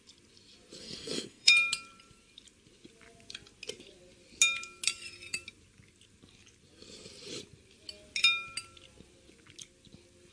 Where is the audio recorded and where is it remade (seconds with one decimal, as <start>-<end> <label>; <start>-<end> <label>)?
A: 0.0-0.8 recorded; 0.8-1.5 remade; 1.5-10.3 recorded